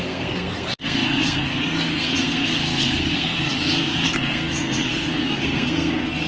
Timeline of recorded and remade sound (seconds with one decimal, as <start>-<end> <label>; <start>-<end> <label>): 0.0-6.3 remade